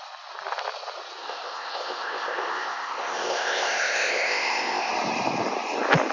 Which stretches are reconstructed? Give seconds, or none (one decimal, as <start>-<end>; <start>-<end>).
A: 1.2-4.9